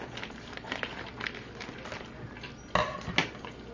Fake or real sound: real